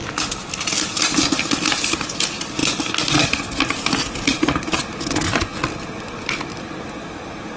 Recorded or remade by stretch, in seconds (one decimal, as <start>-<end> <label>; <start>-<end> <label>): 0.0-4.3 recorded; 4.3-4.8 remade; 4.8-7.6 recorded